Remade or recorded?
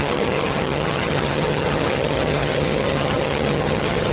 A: remade